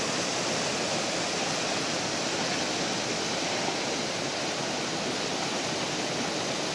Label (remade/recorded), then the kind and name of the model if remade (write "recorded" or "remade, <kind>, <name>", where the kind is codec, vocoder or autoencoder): recorded